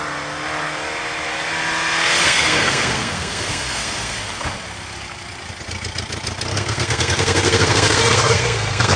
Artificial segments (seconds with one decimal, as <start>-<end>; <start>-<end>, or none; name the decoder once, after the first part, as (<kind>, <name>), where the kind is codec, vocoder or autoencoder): 2.2-4.2 (codec, SNAC); 6.5-9.0